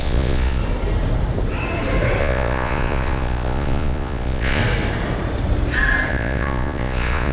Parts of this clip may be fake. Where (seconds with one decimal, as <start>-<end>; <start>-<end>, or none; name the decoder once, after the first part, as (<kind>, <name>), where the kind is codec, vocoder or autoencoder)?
0.0-0.6 (vocoder, Vocos); 2.2-4.6; 6.1-7.3